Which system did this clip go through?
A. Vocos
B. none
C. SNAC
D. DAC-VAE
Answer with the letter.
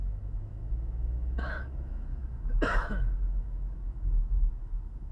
D